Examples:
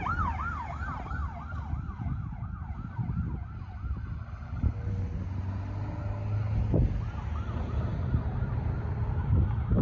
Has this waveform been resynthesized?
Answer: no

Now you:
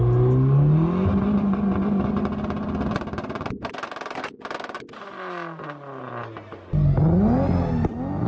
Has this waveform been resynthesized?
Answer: no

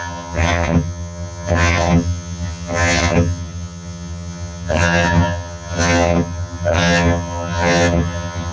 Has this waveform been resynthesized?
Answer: yes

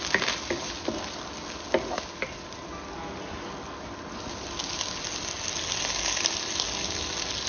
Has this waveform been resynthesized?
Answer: no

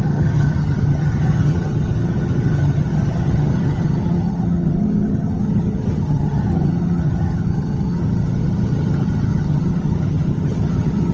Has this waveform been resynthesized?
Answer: yes